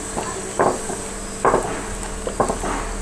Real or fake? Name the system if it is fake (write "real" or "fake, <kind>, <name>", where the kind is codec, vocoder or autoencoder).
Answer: real